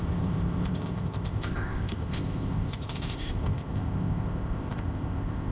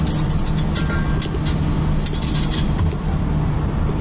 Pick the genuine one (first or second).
second